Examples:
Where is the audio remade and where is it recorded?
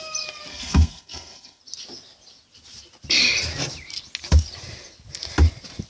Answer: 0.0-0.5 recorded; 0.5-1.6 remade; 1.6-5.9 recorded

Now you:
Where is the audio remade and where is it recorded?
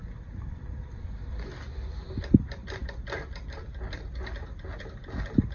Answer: 0.0-5.5 recorded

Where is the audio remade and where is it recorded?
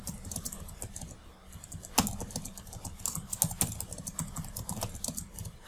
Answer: 0.0-5.7 recorded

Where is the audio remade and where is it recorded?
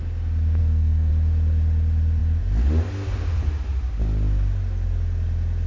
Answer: 0.0-0.6 recorded; 0.6-1.1 remade; 1.1-5.7 recorded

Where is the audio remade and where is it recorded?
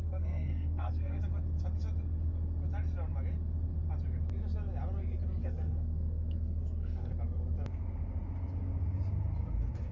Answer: 0.0-1.2 remade; 1.2-5.4 recorded; 5.4-7.1 remade; 7.1-9.9 recorded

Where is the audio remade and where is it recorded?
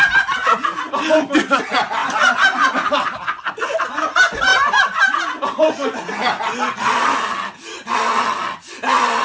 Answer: 0.0-9.2 recorded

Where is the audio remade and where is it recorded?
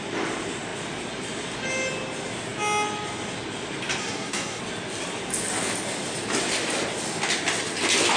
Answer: 0.0-4.0 recorded; 4.0-4.6 remade; 4.6-8.2 recorded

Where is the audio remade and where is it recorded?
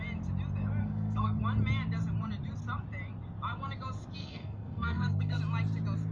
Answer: 0.0-0.8 recorded; 0.8-1.4 remade; 1.4-4.2 recorded; 4.2-5.4 remade; 5.4-6.1 recorded